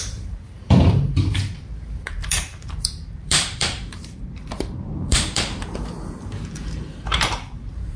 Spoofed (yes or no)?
yes